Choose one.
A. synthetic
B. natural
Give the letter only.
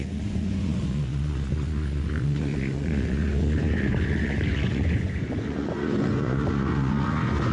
A